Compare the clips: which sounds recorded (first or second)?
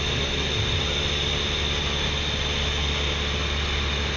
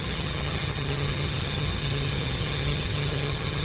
first